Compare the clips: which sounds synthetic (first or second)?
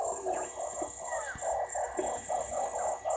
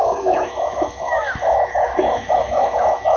second